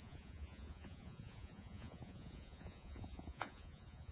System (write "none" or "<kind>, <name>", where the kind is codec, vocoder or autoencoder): vocoder, Vocos